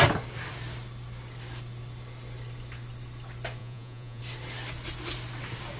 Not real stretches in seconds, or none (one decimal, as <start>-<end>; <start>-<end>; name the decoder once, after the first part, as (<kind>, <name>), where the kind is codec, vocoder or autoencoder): 3.6-4.2 (vocoder, Vocos)